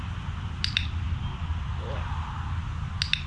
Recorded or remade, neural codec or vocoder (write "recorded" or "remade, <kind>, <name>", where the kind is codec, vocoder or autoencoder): recorded